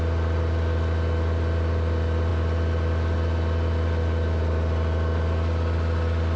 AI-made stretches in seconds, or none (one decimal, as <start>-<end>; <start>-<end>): none